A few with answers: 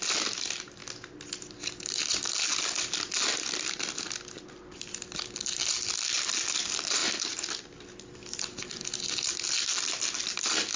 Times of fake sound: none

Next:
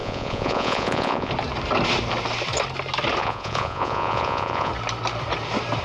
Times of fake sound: 0.0-1.3 (vocoder, Vocos); 3.2-4.7

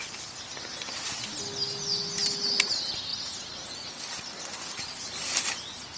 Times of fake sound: none

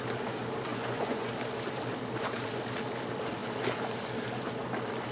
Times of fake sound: 0.7-1.3 (vocoder, Vocos)

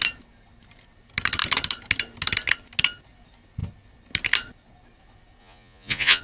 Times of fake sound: 5.4-6.2 (vocoder, Vocos)

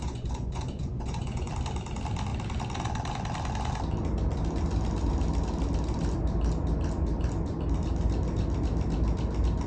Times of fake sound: 0.0-1.5 (vocoder, Vocos)